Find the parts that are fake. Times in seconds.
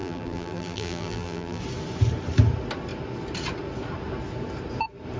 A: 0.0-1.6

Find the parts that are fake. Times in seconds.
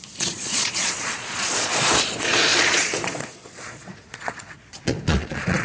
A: 0.0-5.6